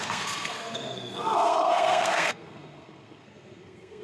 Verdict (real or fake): fake